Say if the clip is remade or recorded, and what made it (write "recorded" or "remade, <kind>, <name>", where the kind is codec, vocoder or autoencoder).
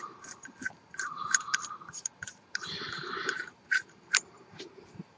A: remade, vocoder, BigVGAN v2